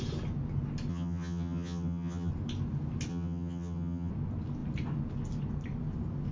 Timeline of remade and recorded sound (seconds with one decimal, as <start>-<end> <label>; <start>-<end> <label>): 0.0-0.9 recorded; 0.9-2.3 remade; 2.3-3.1 recorded; 3.1-4.1 remade; 4.1-6.3 recorded